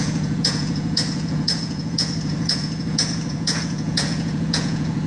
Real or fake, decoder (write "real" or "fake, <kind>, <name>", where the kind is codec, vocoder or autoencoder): fake, vocoder, Vocos